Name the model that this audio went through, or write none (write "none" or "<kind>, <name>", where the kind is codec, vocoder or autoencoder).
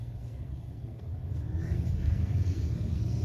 codec, SNAC